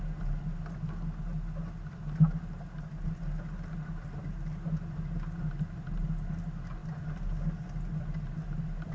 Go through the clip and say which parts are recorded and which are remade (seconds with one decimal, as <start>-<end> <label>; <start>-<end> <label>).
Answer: 0.0-8.9 recorded